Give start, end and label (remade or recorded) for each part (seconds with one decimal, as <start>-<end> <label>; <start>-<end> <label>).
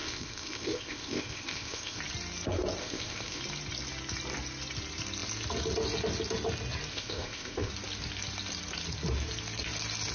0.0-2.0 remade; 2.0-2.8 recorded; 2.8-3.4 remade; 3.4-6.9 recorded; 6.9-7.7 remade; 7.7-10.1 recorded